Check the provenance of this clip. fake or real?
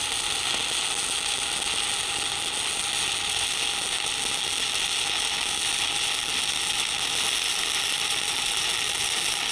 real